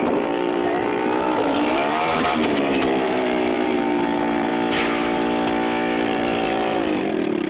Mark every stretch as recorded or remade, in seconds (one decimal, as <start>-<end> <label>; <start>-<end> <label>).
0.0-4.5 remade; 4.5-6.0 recorded; 6.0-7.5 remade